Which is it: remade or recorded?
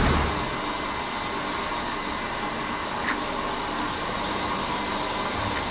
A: recorded